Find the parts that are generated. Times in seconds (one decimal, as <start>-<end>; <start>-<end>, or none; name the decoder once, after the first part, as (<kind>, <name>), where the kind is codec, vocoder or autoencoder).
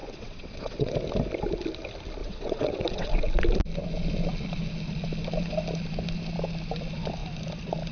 0.0-0.9 (vocoder, WaveNeXt); 2.2-3.1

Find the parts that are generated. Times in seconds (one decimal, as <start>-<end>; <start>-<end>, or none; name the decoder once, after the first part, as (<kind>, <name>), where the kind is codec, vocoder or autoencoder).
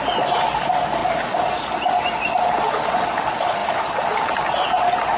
none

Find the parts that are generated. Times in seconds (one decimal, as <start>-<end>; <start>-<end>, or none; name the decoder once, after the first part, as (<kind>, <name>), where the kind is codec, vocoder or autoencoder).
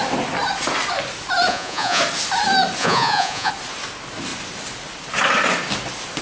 1.5-2.0 (vocoder, Vocos); 2.8-3.5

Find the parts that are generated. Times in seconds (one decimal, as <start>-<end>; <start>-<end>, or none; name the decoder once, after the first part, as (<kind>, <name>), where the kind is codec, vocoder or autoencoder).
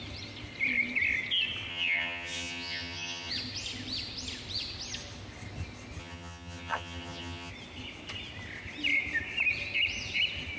1.7-3.3 (vocoder, HiFi-GAN); 6.0-7.5